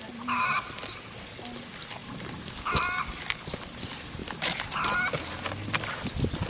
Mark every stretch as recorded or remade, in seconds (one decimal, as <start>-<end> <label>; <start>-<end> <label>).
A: 0.0-6.5 recorded